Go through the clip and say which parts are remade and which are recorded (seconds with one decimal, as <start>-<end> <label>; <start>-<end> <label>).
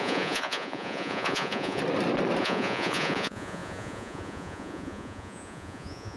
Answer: 0.0-1.8 remade; 1.8-2.4 recorded; 2.4-6.2 remade